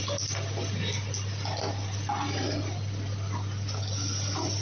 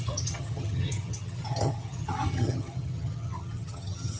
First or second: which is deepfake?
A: second